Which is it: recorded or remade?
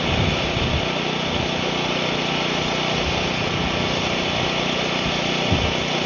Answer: recorded